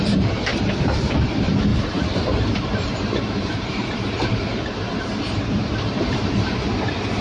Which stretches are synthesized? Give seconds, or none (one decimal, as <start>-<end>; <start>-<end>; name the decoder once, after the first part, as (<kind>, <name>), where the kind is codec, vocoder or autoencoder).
0.0-7.2 (vocoder, BigVGAN v2)